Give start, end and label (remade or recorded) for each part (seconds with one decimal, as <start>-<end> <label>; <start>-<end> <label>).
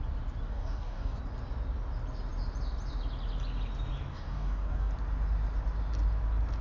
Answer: 0.0-0.5 recorded; 0.5-1.2 remade; 1.2-4.1 recorded; 4.1-4.9 remade; 4.9-6.6 recorded